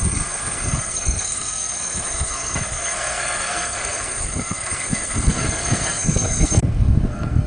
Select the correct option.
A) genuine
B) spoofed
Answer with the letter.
B